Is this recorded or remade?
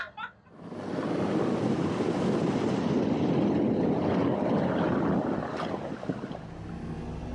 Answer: recorded